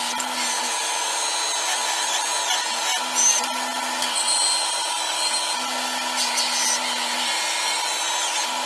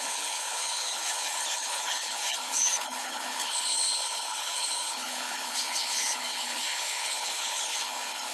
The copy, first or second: second